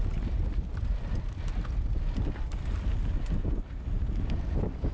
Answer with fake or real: real